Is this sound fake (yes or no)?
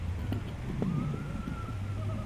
no